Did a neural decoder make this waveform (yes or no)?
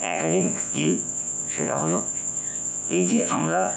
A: yes